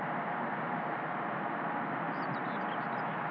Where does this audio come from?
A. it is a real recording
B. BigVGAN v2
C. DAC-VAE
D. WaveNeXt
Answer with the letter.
A